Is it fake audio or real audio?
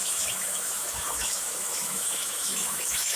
fake